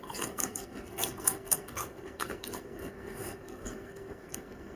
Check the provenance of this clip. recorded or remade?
remade